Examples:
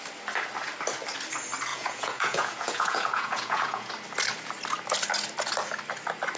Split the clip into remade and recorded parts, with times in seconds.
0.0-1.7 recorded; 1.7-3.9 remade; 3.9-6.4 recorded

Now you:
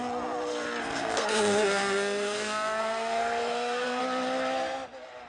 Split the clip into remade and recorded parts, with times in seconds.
0.0-0.8 recorded; 0.8-4.0 remade; 4.0-5.3 recorded

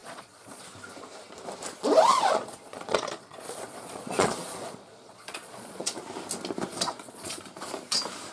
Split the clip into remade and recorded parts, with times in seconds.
0.0-0.6 remade; 0.6-2.1 recorded; 2.1-6.0 remade; 6.0-6.7 recorded; 6.7-7.4 remade; 7.4-8.3 recorded

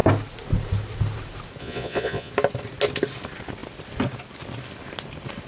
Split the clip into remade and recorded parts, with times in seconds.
0.0-1.6 recorded; 1.6-2.3 remade; 2.3-5.5 recorded

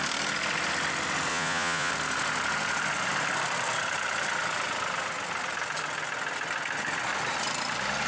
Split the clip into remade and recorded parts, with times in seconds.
0.0-1.3 recorded; 1.3-1.9 remade; 1.9-8.1 recorded

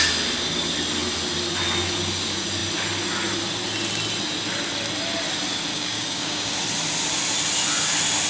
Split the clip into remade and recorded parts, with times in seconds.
0.0-5.7 recorded; 5.7-6.5 remade; 6.5-8.3 recorded